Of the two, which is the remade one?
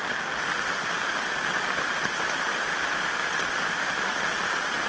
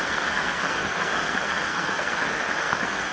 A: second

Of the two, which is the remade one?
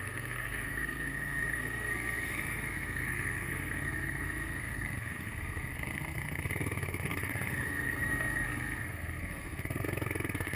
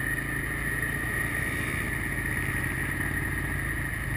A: first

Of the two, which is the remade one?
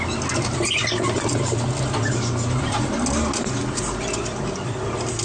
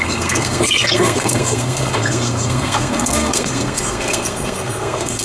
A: second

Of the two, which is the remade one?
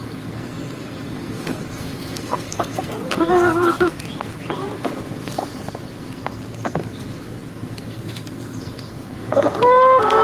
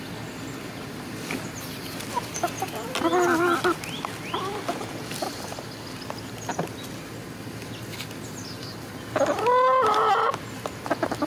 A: first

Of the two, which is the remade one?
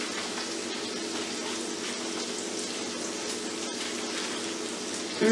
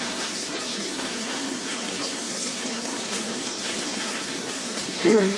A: second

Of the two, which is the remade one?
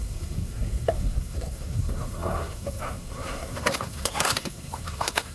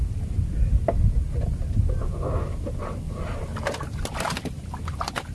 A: first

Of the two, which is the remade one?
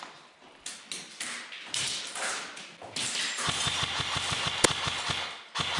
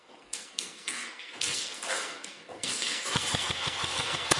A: second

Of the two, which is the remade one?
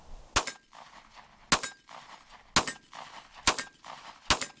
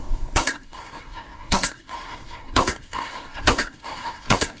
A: second